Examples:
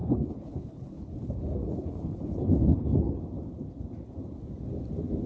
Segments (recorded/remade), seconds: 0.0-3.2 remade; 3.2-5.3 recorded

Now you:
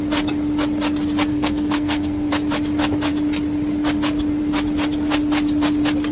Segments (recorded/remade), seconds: 0.0-1.3 recorded; 1.3-2.3 remade; 2.3-6.1 recorded

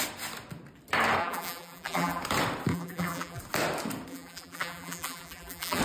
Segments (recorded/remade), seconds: 0.0-1.2 recorded; 1.2-2.2 remade; 2.2-2.7 recorded; 2.7-3.4 remade; 3.4-4.1 recorded; 4.1-5.8 remade